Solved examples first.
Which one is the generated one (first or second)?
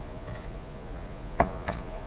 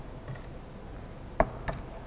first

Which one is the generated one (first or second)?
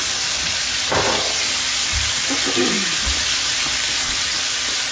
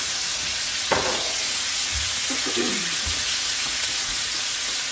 second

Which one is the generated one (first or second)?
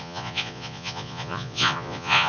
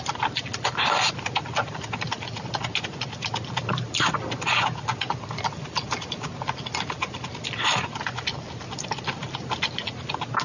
first